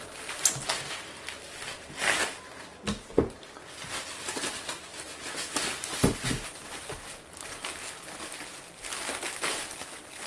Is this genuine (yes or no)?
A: yes